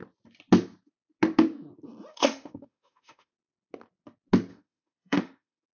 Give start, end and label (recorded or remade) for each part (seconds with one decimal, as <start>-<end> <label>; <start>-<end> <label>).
0.0-2.1 recorded; 2.1-3.3 remade; 3.3-4.5 recorded; 4.5-5.7 remade